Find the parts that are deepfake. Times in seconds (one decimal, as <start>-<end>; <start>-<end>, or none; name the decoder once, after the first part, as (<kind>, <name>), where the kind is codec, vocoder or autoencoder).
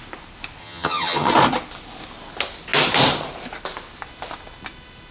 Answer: 0.6-1.3 (vocoder, HiFi-GAN)